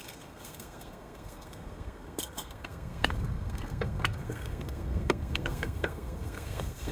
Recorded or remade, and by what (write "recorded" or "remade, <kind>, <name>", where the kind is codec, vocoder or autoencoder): remade, codec, SNAC